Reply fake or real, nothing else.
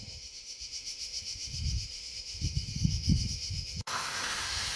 fake